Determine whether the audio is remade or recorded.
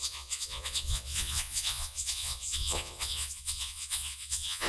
remade